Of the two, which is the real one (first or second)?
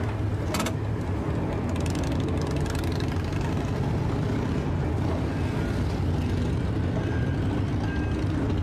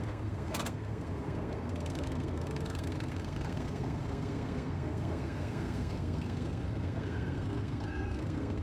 first